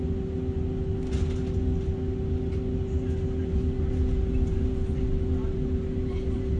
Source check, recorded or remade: recorded